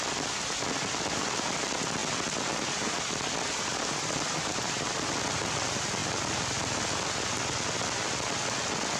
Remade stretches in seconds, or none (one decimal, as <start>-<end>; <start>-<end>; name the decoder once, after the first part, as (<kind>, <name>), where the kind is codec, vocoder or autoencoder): 3.7-5.1 (vocoder, BigVGAN v2)

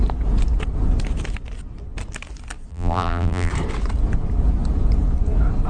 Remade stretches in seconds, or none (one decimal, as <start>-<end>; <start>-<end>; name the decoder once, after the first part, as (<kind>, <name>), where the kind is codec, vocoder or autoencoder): 2.7-3.5 (vocoder, BigVGAN v2)